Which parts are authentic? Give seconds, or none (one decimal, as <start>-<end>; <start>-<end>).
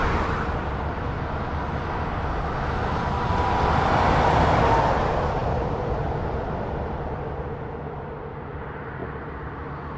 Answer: 0.8-2.9; 4.8-5.4; 7.7-10.0